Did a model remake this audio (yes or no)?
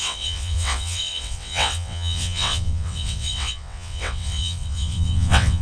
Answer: yes